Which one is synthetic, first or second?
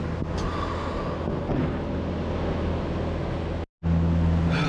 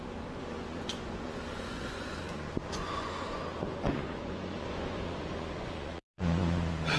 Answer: second